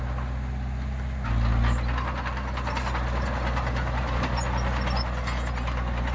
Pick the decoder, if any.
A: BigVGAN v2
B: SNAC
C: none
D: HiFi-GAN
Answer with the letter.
C